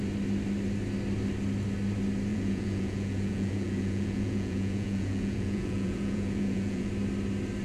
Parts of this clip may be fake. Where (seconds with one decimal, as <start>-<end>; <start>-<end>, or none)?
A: 2.3-6.9

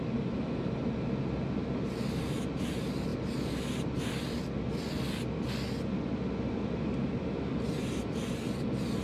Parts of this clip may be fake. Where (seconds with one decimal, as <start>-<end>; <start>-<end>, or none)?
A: none